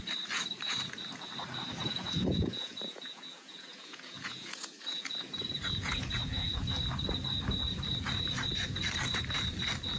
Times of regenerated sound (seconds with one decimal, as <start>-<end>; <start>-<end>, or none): 1.8-6.8